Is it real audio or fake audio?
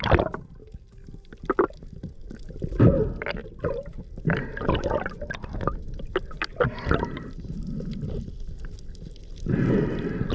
real